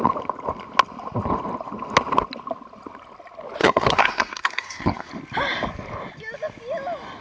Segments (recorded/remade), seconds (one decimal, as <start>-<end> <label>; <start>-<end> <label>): 0.0-3.6 recorded; 3.6-5.1 remade; 5.1-7.2 recorded